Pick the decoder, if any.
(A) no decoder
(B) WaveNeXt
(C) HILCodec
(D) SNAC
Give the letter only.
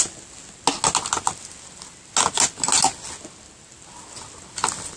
A